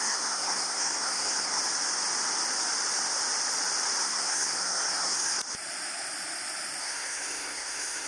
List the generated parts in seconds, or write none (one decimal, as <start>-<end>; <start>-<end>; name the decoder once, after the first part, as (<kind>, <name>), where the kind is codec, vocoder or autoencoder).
0.0-1.6 (codec, SNAC); 4.0-5.4; 6.8-8.1